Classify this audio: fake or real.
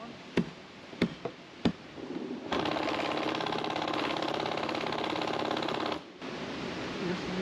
real